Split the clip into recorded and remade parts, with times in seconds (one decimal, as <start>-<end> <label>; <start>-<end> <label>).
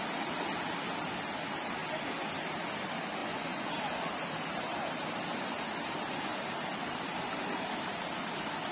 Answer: 0.0-3.2 recorded; 3.2-3.7 remade; 3.7-8.7 recorded